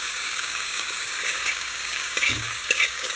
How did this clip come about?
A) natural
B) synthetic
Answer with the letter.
B